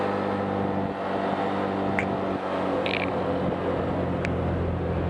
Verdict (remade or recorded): recorded